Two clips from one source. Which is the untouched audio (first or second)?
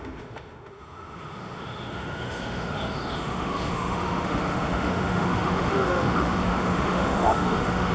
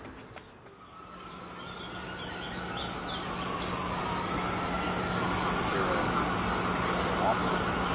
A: second